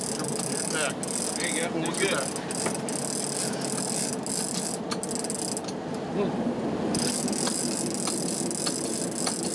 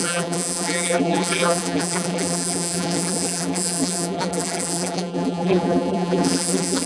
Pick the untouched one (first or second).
first